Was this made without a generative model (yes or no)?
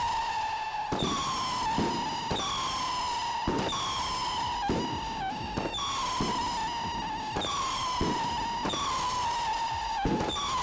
yes